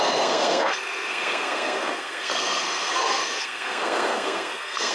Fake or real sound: fake